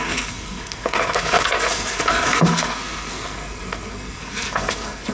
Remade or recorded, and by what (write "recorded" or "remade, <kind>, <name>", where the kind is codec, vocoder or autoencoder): remade, codec, SNAC